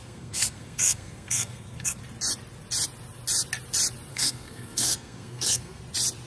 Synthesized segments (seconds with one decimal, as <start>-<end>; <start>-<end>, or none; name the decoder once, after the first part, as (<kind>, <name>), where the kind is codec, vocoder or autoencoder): 0.0-2.0 (codec, SNAC); 4.1-5.8